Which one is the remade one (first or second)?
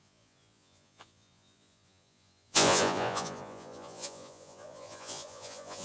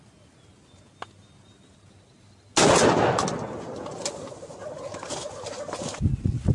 first